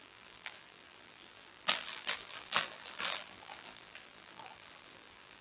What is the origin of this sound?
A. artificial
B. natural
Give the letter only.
A